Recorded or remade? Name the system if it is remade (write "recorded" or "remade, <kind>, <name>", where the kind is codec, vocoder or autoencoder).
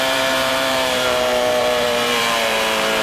remade, vocoder, BigVGAN v2